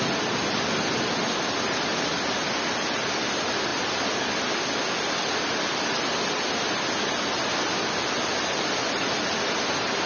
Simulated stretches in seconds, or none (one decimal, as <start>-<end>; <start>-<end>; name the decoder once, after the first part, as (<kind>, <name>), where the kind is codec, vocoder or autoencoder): none